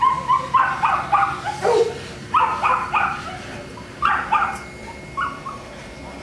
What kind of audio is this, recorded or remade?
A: recorded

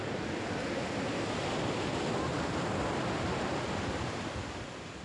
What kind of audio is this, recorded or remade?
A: recorded